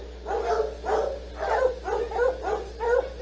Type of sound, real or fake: real